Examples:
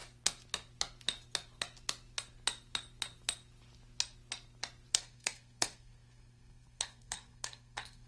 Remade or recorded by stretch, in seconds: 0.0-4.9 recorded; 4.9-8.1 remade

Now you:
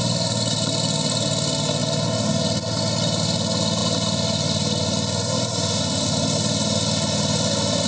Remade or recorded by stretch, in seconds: 0.0-7.9 recorded